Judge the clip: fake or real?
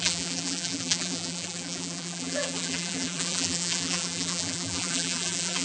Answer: fake